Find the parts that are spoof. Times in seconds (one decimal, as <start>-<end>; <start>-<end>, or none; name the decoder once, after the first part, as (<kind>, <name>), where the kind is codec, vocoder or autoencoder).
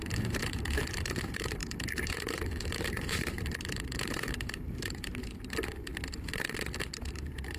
0.0-5.9 (vocoder, BigVGAN v2); 7.0-7.6